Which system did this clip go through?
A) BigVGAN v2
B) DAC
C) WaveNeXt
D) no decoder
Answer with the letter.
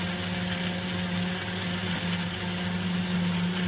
D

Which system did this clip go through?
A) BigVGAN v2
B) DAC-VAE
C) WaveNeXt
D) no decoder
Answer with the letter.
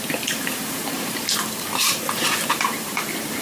A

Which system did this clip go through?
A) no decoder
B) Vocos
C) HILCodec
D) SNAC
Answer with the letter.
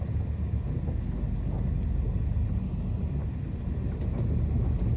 A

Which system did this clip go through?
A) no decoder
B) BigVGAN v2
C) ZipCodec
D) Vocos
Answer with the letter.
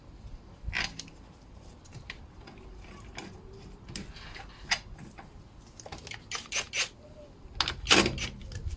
A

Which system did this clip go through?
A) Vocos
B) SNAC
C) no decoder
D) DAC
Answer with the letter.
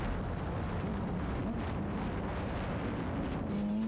C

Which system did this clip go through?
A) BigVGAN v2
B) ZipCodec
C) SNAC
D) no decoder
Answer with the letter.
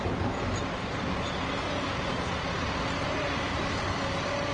D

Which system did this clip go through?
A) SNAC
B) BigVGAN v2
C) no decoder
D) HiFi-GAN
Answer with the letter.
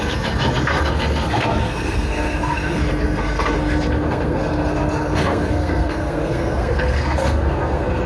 A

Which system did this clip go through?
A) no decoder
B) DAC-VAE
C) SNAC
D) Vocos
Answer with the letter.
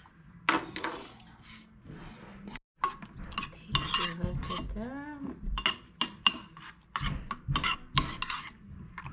A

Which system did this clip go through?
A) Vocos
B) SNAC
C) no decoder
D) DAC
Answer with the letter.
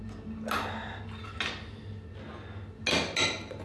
C